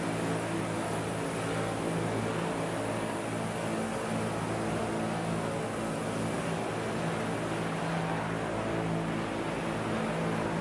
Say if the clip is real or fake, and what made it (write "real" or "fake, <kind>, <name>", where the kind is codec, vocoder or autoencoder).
real